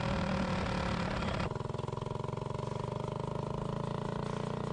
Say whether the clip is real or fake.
real